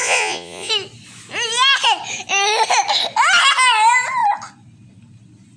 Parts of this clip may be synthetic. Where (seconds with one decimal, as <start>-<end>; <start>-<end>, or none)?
0.0-0.7